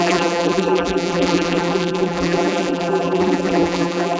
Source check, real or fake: fake